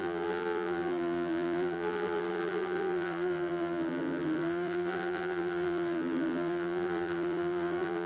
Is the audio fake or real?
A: fake